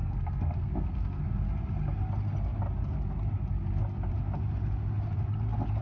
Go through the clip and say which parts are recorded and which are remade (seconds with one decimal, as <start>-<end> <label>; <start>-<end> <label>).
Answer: 0.0-1.2 remade; 1.2-5.8 recorded